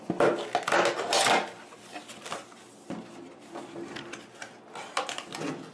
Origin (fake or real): real